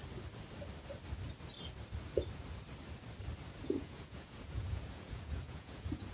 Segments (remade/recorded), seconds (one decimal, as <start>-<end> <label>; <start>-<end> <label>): 0.0-3.6 recorded; 3.6-6.1 remade